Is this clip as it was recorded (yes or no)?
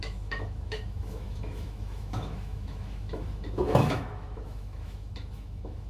no